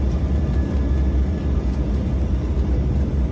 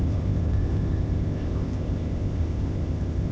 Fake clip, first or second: second